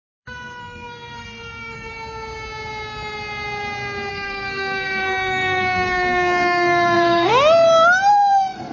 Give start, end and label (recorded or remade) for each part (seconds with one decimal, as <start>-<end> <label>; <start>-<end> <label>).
0.0-1.9 remade; 1.9-4.1 recorded; 4.1-7.3 remade; 7.3-8.1 recorded; 8.1-8.7 remade